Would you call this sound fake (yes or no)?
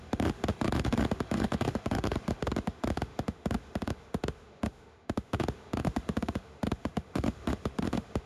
yes